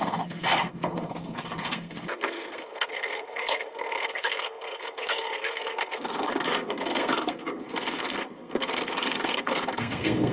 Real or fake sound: fake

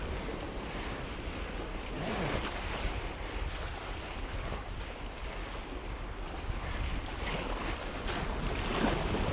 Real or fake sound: real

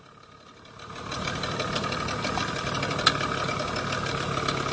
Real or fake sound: real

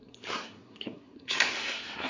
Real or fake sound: fake